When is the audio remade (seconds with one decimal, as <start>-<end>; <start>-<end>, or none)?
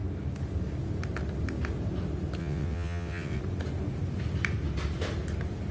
2.4-3.4